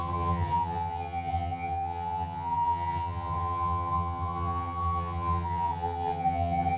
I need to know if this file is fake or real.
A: fake